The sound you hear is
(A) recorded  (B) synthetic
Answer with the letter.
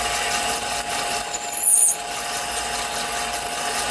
A